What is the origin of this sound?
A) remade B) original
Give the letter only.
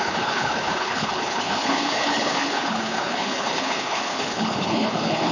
A